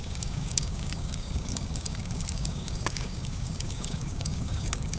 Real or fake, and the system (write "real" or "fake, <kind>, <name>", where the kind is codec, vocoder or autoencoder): fake, codec, DAC